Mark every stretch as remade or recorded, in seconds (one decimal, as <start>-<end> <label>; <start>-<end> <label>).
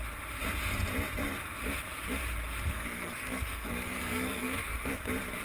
0.0-2.7 recorded; 2.7-4.9 remade; 4.9-5.4 recorded